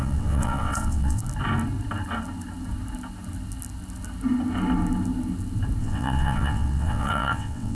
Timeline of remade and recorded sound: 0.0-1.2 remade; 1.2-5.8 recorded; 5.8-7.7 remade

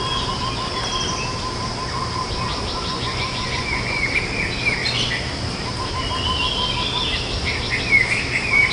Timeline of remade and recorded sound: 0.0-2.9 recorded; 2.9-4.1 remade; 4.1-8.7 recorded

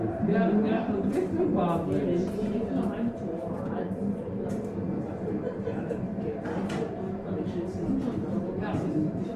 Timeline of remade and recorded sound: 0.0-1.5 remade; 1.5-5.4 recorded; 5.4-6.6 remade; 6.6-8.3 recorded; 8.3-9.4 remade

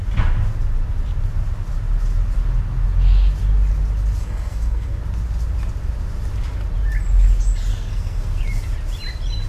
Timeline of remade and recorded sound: 0.0-4.2 recorded; 4.2-5.0 remade; 5.0-7.7 recorded; 7.7-8.4 remade; 8.4-9.5 recorded